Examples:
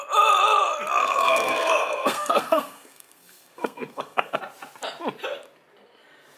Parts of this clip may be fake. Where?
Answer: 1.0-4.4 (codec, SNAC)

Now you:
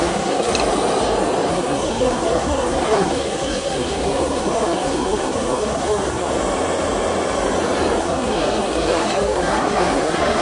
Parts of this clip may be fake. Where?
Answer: 0.0-0.5 (codec, SNAC); 1.5-6.3; 8.0-10.4

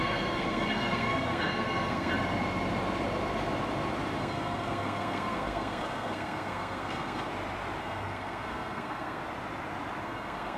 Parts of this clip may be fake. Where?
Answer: 0.0-2.1 (codec, SNAC); 4.2-7.3; 7.8-9.2; 10.0-10.6

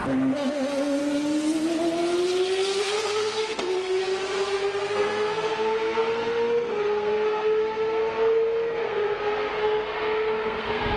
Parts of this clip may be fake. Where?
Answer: 0.0-1.0 (codec, SNAC); 2.8-4.0; 4.8-11.0

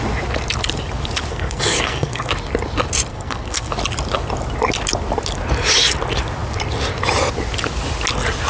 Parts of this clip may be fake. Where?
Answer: 1.3-2.3 (codec, SNAC); 3.1-3.7

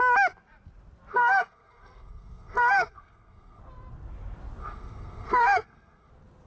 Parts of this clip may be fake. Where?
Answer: 1.1-3.6 (codec, SNAC); 4.6-6.1

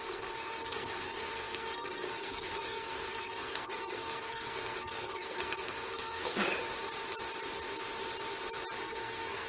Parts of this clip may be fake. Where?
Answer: 0.0-6.5 (codec, SNAC); 8.8-9.5

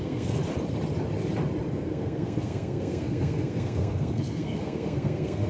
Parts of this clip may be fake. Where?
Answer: 0.0-0.4 (codec, SNAC); 1.7-5.5